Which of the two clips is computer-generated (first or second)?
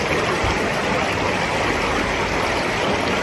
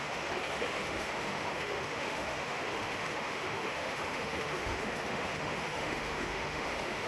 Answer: second